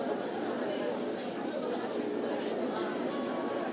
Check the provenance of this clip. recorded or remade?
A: recorded